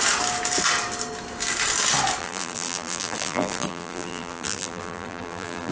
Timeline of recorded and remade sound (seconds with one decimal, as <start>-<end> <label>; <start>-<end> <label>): 0.0-2.2 recorded; 2.2-5.7 remade